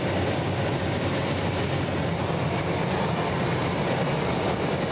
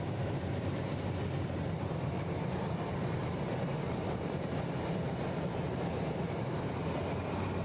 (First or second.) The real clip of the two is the first